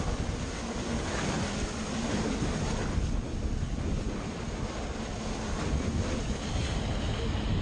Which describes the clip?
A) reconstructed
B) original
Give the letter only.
B